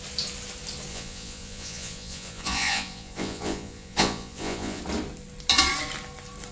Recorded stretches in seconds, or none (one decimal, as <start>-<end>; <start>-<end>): 0.0-0.9; 4.8-6.5